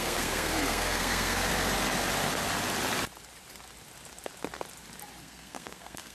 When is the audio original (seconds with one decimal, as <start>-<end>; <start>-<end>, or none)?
1.5-5.2